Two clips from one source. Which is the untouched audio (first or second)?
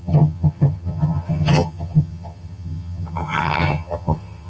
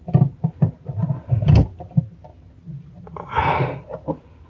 second